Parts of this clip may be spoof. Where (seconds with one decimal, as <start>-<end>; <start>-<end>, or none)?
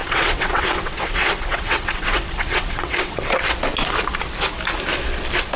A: 0.0-3.4